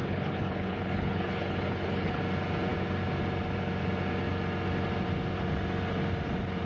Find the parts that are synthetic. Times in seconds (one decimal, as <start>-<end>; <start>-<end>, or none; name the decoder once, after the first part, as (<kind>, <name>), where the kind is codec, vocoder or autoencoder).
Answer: 0.0-2.2 (codec, HILCodec)